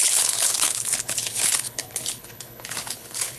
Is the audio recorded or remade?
remade